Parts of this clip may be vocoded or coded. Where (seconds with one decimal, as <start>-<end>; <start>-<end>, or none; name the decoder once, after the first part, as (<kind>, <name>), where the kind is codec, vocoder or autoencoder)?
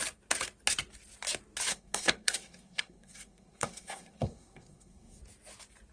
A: 1.7-5.2 (codec, SNAC)